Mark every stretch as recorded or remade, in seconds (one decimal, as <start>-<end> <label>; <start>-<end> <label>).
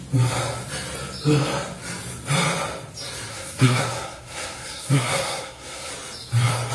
0.0-3.3 recorded; 3.3-5.9 remade; 5.9-6.7 recorded